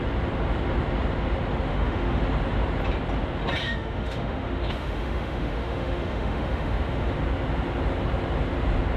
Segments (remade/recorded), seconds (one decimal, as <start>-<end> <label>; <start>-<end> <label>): 0.0-1.7 recorded; 1.7-2.2 remade; 2.2-3.6 recorded; 3.6-7.1 remade; 7.1-9.0 recorded